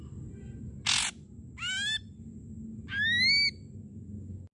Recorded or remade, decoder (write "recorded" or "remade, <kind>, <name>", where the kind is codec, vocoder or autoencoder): recorded